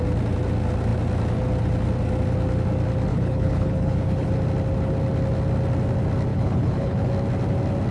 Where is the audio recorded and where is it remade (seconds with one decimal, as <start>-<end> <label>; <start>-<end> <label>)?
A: 0.0-3.1 recorded; 3.1-4.3 remade; 4.3-6.3 recorded; 6.3-7.1 remade; 7.1-7.9 recorded